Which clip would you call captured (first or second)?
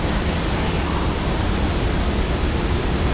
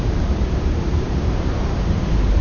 first